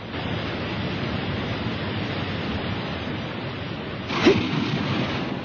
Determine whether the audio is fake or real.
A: real